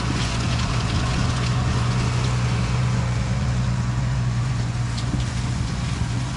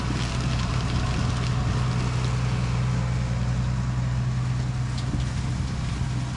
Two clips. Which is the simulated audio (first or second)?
first